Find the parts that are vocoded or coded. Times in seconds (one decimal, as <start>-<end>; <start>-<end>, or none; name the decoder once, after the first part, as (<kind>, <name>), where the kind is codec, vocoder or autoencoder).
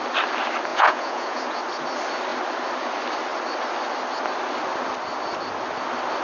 0.7-1.6 (vocoder, Vocos)